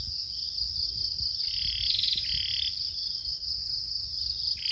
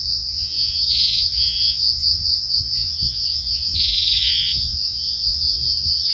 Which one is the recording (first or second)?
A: first